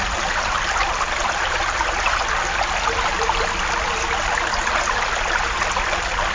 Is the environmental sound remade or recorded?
recorded